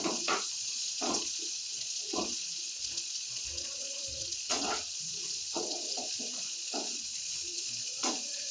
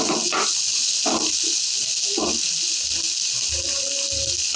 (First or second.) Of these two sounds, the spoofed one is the first